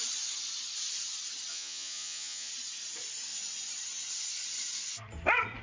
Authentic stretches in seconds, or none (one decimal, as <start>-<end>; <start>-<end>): 0.0-1.5; 2.5-5.6